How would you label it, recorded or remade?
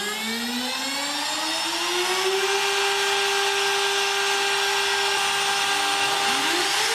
recorded